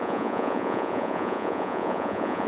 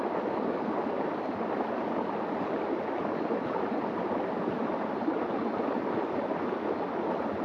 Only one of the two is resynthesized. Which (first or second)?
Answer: first